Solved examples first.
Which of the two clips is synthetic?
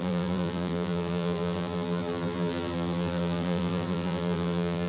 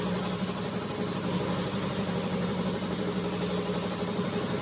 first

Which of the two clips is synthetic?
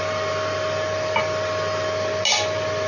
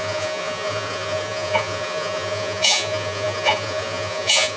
second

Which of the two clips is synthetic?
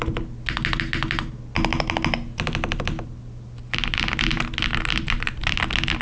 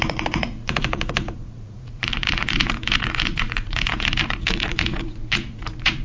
second